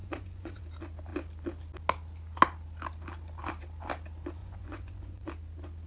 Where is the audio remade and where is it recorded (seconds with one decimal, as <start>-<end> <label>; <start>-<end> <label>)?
0.0-0.6 remade; 0.6-4.4 recorded; 4.4-5.3 remade; 5.3-5.9 recorded